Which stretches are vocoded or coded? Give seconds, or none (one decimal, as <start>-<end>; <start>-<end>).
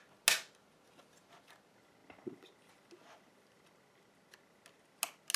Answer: none